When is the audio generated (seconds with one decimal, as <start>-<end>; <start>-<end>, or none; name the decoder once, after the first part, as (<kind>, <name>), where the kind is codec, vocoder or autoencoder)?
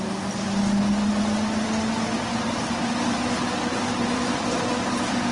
3.7-4.7 (vocoder, BigVGAN v2)